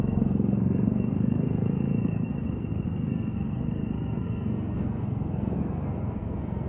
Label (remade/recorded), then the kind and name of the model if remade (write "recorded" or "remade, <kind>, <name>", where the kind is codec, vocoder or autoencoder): remade, codec, SNAC